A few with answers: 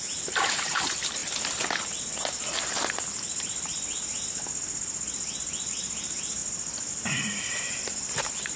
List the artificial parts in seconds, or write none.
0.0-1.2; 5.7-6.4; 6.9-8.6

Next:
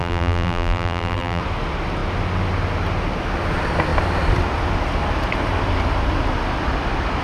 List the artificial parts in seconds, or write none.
0.0-1.4

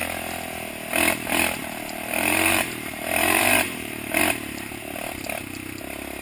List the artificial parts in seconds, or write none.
1.6-4.2

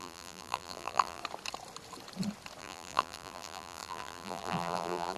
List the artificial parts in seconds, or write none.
0.0-1.2; 2.6-5.2

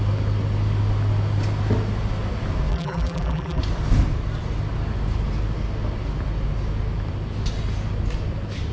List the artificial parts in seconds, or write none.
2.7-3.6

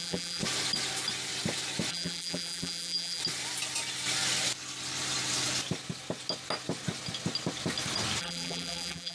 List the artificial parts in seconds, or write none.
0.0-0.4; 1.9-3.2; 8.2-9.1

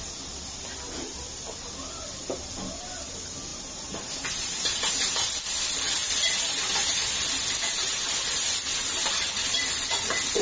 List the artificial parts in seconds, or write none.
3.5-4.9

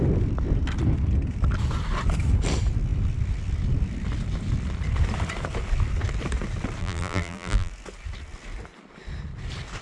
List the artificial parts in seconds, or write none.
6.8-7.7